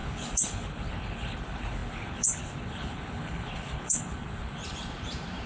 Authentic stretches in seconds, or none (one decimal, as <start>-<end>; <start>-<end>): 4.6-5.5